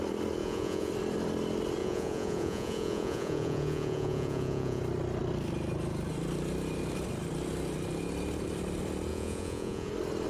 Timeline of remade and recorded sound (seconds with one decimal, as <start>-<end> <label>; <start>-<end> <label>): 0.0-0.4 recorded; 0.4-0.9 remade; 0.9-1.8 recorded; 1.8-4.8 remade; 4.8-9.1 recorded; 9.1-9.9 remade; 9.9-10.3 recorded